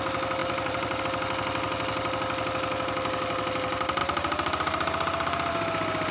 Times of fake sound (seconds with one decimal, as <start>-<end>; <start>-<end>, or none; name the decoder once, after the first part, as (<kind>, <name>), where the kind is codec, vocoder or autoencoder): 0.4-1.0 (vocoder, BigVGAN v2); 4.0-5.5